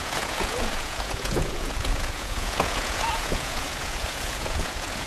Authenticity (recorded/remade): remade